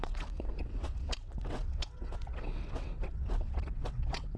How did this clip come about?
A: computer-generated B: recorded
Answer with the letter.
A